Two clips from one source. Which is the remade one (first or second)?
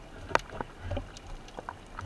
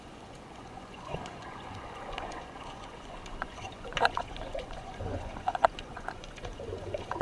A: second